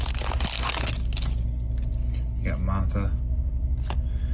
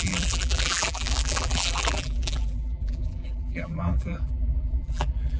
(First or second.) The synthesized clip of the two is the second